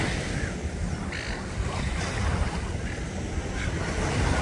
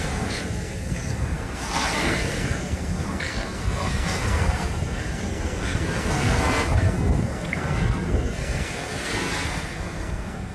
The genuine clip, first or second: first